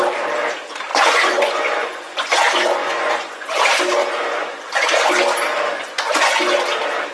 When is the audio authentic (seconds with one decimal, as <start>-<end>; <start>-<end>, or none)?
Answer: 0.0-0.9; 3.6-4.0; 4.7-5.7; 6.4-7.1